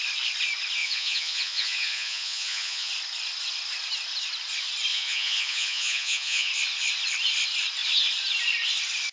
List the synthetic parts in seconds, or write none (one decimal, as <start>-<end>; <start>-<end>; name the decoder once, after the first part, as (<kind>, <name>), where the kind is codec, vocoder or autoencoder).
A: 0.8-2.9 (vocoder, Vocos); 4.9-6.5